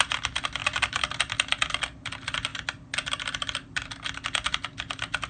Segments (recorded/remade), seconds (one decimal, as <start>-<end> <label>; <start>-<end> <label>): 0.0-5.3 recorded